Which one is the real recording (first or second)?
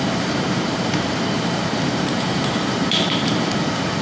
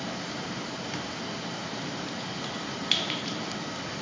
second